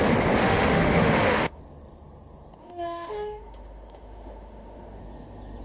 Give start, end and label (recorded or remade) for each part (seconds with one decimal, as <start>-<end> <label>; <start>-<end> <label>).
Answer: 0.0-0.4 recorded; 0.4-1.6 remade; 1.6-2.6 recorded; 2.6-5.0 remade; 5.0-5.6 recorded

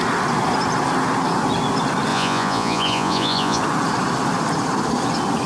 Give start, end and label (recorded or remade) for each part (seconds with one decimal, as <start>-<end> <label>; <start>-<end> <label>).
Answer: 0.0-2.1 recorded; 2.1-3.6 remade; 3.6-5.5 recorded

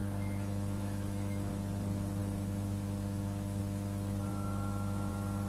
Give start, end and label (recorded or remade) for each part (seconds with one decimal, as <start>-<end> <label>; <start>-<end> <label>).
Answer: 0.0-1.5 remade; 1.5-2.2 recorded; 2.2-3.6 remade; 3.6-4.3 recorded; 4.3-5.1 remade; 5.1-5.5 recorded

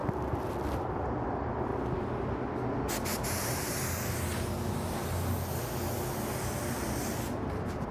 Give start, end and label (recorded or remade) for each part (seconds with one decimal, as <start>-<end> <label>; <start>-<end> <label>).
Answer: 0.0-1.7 remade; 1.7-6.4 recorded; 6.4-7.9 remade

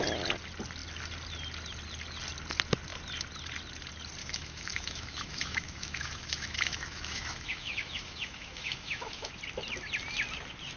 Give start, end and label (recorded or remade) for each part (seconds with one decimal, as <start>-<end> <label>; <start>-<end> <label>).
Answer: 0.0-4.2 recorded; 4.2-9.3 remade; 9.3-10.8 recorded

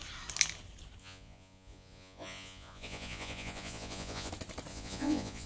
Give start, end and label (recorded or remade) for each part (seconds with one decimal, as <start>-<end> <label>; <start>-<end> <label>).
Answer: 0.0-1.0 recorded; 1.0-4.3 remade; 4.3-4.7 recorded; 4.7-5.5 remade

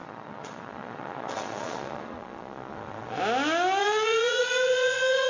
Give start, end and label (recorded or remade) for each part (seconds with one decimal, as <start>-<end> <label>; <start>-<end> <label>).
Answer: 0.0-3.2 remade; 3.2-3.8 recorded; 3.8-5.3 remade